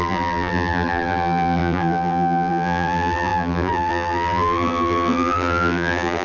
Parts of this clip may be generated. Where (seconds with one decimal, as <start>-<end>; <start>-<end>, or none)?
0.0-6.2